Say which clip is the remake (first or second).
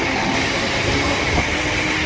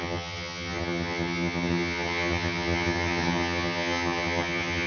second